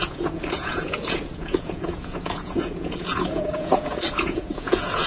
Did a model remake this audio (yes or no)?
yes